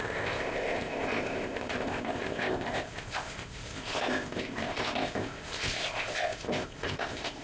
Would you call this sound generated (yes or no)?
yes